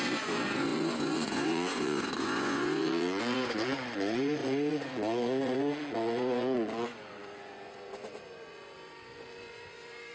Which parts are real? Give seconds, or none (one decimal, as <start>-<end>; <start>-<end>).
none